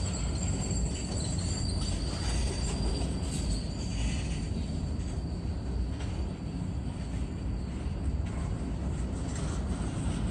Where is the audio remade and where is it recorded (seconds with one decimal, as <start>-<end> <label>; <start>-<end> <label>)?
0.0-10.3 recorded